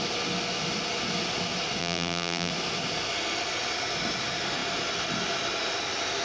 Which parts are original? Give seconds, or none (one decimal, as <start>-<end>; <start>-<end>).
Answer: 0.0-1.8; 2.5-6.2